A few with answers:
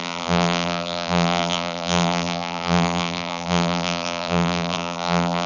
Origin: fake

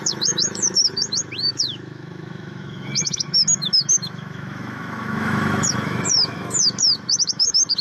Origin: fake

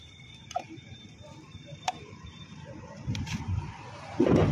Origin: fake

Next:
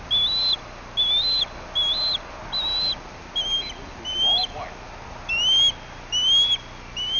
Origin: real